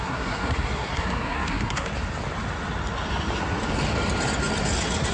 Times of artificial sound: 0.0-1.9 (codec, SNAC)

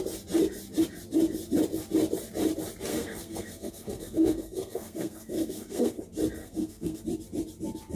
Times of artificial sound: 2.9-6.0 (codec, SNAC); 6.4-7.0

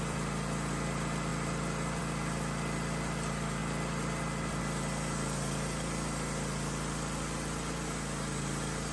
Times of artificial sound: none

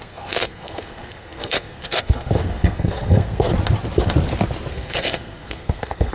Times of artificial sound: 0.0-3.5 (codec, SNAC); 4.7-6.1

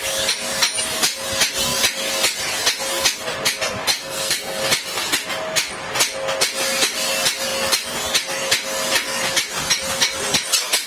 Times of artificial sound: 3.9-4.6 (codec, SNAC)